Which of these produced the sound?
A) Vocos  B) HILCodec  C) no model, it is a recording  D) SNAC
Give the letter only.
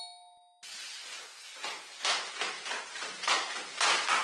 C